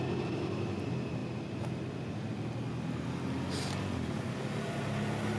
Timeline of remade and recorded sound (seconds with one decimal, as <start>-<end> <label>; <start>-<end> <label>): 0.0-5.4 recorded